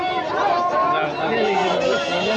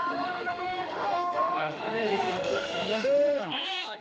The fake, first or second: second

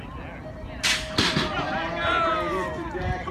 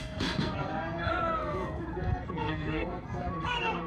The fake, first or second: second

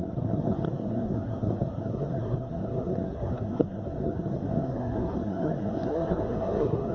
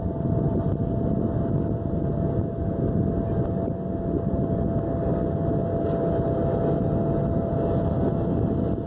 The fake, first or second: first